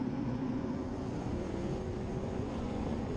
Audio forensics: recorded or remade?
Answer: remade